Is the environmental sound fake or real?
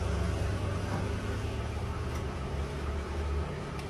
real